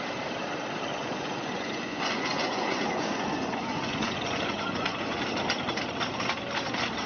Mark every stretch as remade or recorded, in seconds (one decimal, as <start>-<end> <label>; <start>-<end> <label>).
0.0-0.9 recorded; 0.9-5.2 remade; 5.2-7.1 recorded